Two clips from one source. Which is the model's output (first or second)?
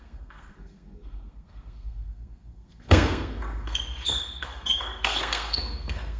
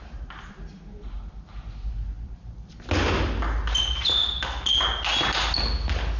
first